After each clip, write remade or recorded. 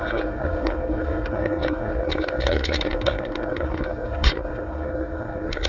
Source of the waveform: remade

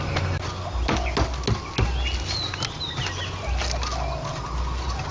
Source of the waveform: recorded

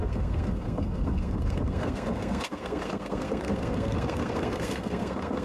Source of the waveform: remade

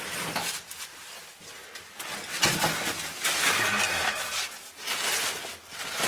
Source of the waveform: recorded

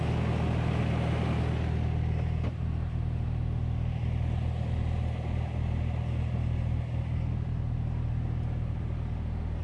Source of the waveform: recorded